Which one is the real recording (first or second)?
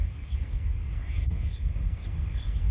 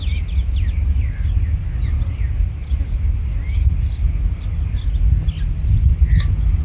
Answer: second